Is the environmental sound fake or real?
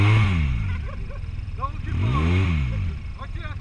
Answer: real